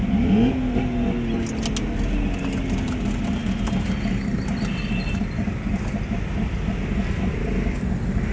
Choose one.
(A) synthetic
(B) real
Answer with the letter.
B